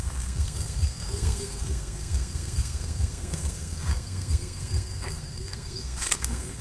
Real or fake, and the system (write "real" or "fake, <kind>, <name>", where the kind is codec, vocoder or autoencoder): fake, codec, SNAC